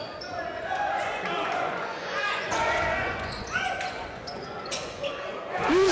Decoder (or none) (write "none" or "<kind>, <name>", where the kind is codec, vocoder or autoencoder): vocoder, Vocos